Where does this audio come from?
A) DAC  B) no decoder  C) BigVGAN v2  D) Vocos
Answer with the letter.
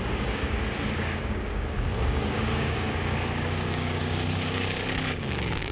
A